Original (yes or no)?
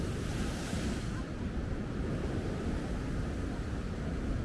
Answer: yes